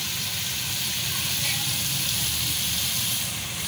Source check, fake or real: real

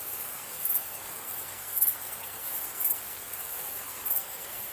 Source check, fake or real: fake